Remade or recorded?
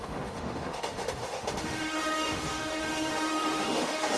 remade